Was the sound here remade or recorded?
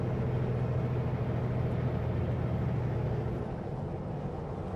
recorded